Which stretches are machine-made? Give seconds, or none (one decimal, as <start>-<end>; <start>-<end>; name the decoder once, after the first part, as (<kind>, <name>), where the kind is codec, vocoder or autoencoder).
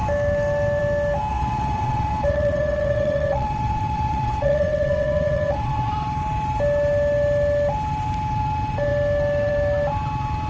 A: 1.3-5.9 (vocoder, WaveNeXt)